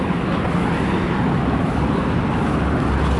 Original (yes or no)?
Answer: yes